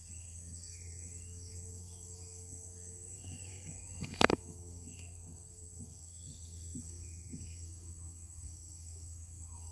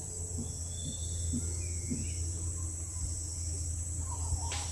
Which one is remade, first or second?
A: first